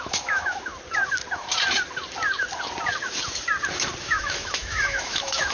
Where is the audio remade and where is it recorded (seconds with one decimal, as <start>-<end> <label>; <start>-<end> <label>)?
0.0-0.7 remade; 0.7-4.0 recorded; 4.0-5.5 remade

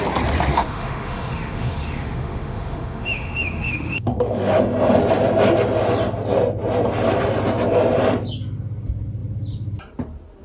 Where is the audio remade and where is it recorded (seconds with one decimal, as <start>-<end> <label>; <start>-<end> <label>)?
0.0-0.5 recorded; 0.5-4.6 remade; 4.6-10.4 recorded

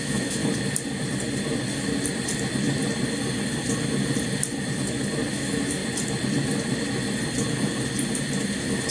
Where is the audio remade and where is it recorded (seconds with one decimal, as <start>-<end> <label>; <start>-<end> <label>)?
0.0-0.4 remade; 0.4-5.3 recorded; 5.3-5.8 remade; 5.8-8.9 recorded

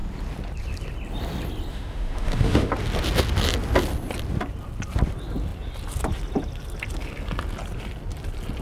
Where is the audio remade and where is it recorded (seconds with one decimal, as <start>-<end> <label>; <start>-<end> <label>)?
0.0-1.7 recorded; 1.7-2.7 remade; 2.7-8.6 recorded

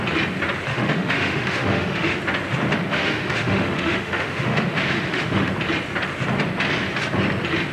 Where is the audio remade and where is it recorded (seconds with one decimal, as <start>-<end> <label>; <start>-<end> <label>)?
0.0-0.7 recorded; 0.7-2.2 remade; 2.2-2.9 recorded; 2.9-5.5 remade; 5.5-7.7 recorded

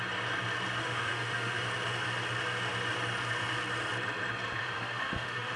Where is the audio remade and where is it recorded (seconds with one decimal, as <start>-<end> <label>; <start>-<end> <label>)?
0.0-0.8 recorded; 0.8-1.6 remade; 1.6-4.6 recorded; 4.6-5.6 remade

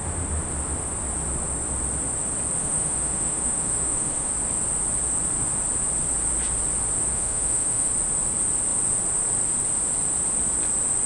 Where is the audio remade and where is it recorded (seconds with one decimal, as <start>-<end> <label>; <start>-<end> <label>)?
0.0-2.6 recorded; 2.6-4.3 remade; 4.3-7.1 recorded; 7.1-7.9 remade; 7.9-11.1 recorded